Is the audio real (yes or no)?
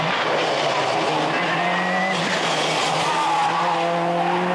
yes